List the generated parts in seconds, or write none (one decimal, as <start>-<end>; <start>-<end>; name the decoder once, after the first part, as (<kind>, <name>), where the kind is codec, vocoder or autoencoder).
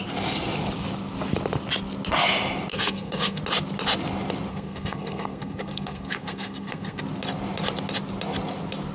2.7-3.4 (codec, SNAC); 4.5-7.0